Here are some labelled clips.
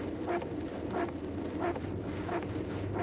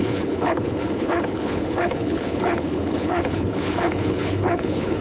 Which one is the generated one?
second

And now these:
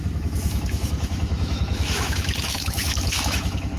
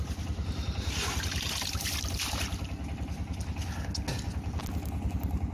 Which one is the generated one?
first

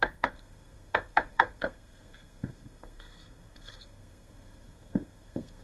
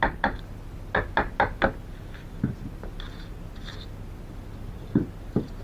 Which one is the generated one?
first